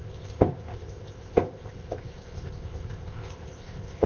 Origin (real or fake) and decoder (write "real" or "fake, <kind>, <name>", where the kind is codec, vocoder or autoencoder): fake, codec, ZipCodec